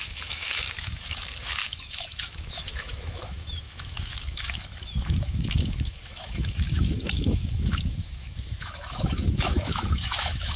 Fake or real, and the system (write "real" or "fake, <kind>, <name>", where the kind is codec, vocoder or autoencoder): fake, autoencoder, DAC-VAE